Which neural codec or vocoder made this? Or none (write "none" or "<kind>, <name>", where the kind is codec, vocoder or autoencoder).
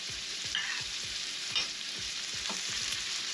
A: vocoder, BigVGAN v2